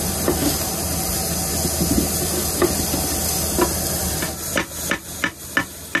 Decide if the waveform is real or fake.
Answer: real